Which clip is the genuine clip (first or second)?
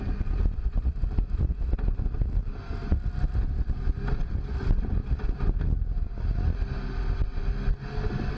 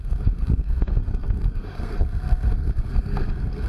first